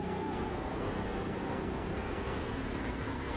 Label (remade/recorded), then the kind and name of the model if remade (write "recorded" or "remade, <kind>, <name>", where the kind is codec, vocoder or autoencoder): remade, codec, SNAC